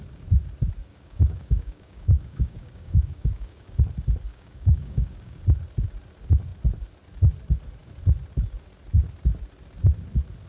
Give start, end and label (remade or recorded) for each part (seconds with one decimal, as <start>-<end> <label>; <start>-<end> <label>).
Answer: 0.0-0.9 recorded; 0.9-3.8 remade; 3.8-4.3 recorded; 4.3-5.4 remade; 5.4-10.5 recorded